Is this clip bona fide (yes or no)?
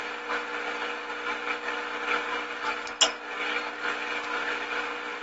yes